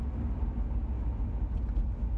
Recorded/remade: recorded